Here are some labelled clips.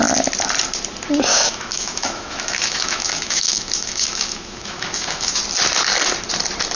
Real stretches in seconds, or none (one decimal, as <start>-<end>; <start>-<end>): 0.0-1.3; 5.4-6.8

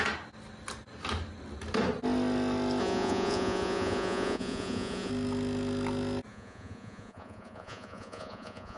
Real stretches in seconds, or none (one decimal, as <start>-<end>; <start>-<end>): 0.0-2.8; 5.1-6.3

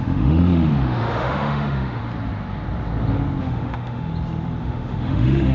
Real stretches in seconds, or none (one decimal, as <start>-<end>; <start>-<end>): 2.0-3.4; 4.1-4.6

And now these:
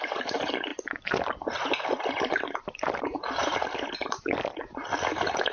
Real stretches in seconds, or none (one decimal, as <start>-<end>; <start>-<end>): 0.0-5.5

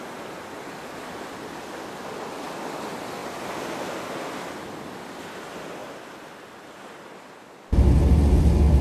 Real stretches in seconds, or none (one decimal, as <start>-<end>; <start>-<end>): 0.0-8.8

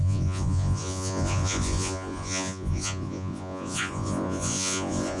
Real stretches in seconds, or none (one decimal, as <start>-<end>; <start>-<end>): none